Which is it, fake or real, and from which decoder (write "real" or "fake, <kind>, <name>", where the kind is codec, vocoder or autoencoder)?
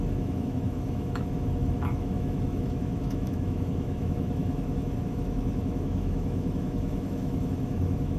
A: fake, autoencoder, DAC-VAE